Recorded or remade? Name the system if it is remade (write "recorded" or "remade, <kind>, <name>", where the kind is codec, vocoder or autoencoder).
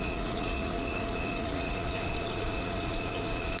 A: remade, vocoder, Vocos